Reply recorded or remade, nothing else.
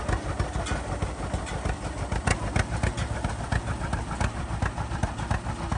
recorded